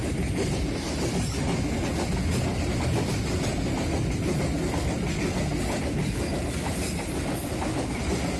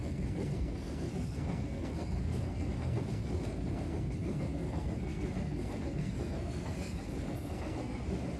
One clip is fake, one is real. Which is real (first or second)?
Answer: first